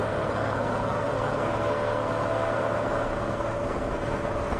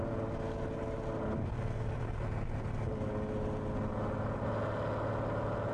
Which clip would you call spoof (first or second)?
first